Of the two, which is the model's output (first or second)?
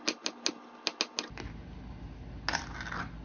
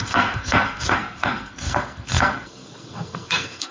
second